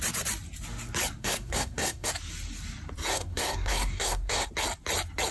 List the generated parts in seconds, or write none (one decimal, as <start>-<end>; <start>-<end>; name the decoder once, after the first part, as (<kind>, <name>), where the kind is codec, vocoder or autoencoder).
1.2-2.1 (codec, SNAC); 3.1-4.5